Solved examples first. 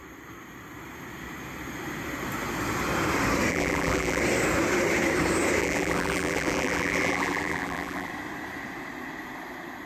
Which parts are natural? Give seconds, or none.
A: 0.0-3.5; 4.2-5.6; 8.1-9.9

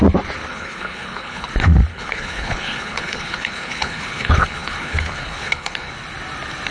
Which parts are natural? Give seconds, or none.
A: 0.0-0.5; 1.5-1.9; 5.9-6.7

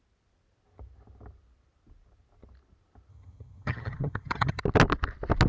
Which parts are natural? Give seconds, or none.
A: 0.0-3.1; 4.6-5.5

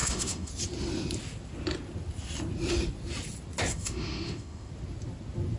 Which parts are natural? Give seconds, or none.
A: 0.5-3.7; 4.7-5.6

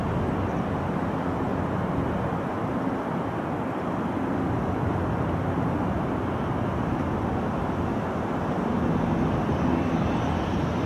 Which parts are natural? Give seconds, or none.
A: 0.0-10.9

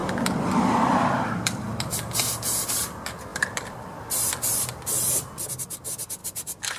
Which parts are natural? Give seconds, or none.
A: 1.9-3.3; 4.9-6.2

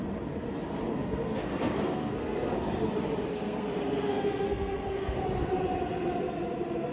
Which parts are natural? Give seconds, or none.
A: 0.0-0.9; 2.9-3.3; 5.2-6.9